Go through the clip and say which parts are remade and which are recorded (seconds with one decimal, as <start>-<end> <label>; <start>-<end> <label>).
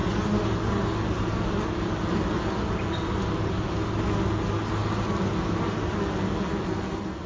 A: 0.0-7.3 recorded